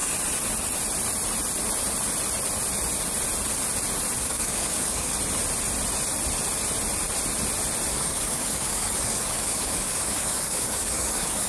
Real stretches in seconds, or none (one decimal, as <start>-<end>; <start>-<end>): 0.0-4.2; 5.1-7.9